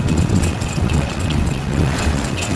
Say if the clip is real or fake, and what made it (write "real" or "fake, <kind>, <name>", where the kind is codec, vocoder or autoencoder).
fake, vocoder, WaveNeXt